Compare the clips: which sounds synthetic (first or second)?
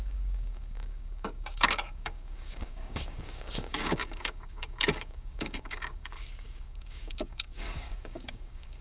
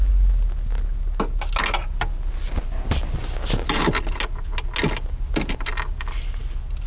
first